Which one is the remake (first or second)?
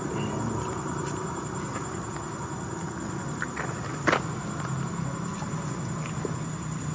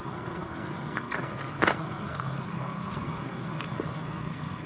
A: second